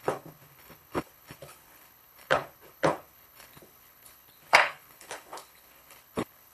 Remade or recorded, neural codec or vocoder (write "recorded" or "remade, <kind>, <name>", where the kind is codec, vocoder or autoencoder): remade, codec, HILCodec